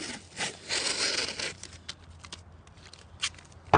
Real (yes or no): yes